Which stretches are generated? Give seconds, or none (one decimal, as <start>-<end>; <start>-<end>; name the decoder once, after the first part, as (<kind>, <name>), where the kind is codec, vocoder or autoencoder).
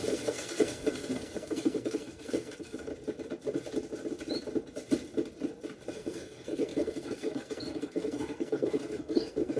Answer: 0.0-2.9 (codec, SNAC); 5.9-9.6